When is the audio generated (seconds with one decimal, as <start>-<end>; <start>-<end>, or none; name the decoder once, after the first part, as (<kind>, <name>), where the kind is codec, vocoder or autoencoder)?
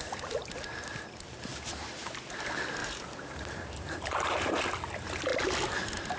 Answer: 1.5-2.0 (vocoder, BigVGAN v2); 2.8-4.6